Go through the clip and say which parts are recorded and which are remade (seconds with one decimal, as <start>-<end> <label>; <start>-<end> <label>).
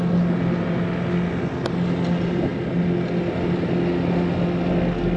0.0-5.2 recorded